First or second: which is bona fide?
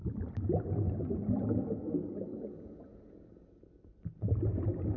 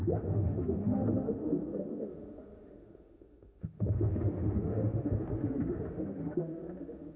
first